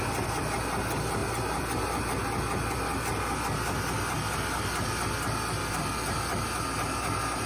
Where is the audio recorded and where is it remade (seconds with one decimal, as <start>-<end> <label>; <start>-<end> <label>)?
0.0-7.5 recorded